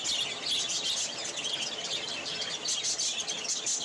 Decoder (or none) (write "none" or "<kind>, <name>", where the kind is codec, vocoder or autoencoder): none